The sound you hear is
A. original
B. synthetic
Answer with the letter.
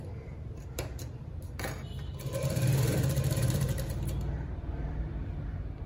B